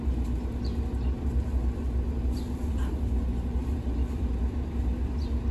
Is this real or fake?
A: real